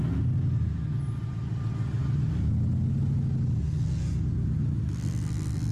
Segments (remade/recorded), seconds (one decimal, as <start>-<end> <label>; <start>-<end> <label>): 0.0-5.7 recorded